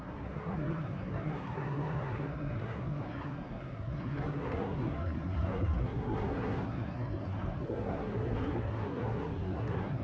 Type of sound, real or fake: fake